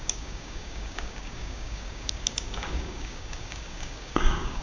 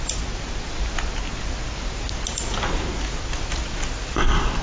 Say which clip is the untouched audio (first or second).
second